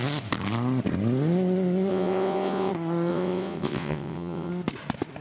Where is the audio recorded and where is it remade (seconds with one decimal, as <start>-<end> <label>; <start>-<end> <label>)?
0.0-1.9 recorded; 1.9-2.7 remade; 2.7-3.1 recorded; 3.1-4.5 remade; 4.5-5.2 recorded